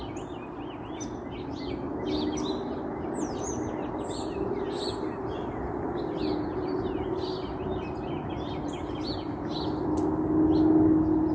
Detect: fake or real real